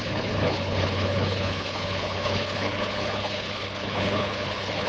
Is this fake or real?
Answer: fake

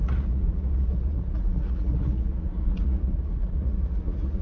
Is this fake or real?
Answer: fake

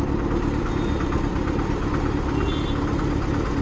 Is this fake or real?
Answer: real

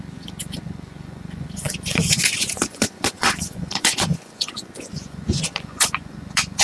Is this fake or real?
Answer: fake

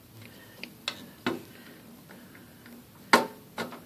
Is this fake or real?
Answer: real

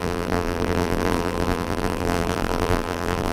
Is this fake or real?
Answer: fake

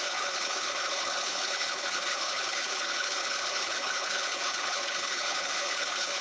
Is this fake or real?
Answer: fake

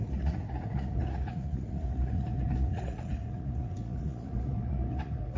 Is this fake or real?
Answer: fake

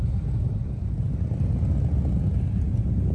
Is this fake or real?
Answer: real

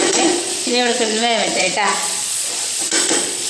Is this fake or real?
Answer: fake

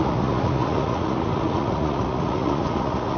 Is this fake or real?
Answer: fake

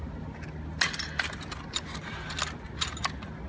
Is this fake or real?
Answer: real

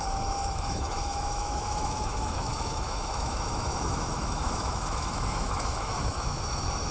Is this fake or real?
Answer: fake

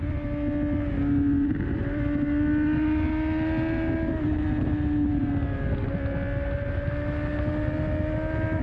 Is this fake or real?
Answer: real